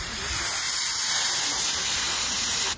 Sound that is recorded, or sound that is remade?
remade